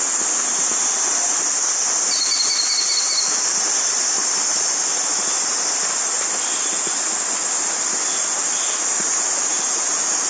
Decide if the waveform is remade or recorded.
recorded